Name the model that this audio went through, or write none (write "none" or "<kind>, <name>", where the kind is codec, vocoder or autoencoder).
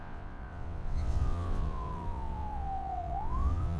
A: vocoder, WaveNeXt